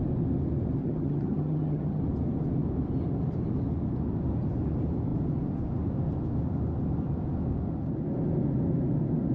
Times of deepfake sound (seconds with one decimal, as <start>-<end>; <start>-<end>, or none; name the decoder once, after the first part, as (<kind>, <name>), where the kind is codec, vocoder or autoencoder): 0.8-2.0 (vocoder, HiFi-GAN)